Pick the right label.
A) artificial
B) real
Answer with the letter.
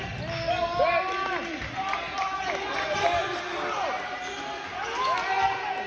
B